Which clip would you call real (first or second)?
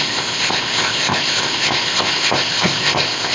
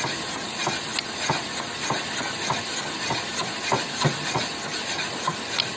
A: second